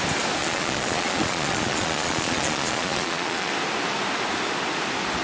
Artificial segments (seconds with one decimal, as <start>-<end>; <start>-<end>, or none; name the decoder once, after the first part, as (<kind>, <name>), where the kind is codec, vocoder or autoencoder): 0.4-3.5 (vocoder, Vocos)